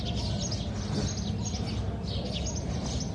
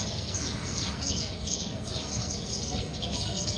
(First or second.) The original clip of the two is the first